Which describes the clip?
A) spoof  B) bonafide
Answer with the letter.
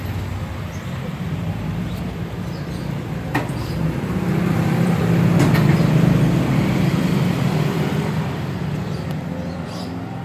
A